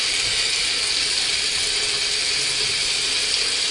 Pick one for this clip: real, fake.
real